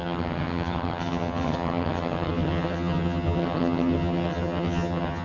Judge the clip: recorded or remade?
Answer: remade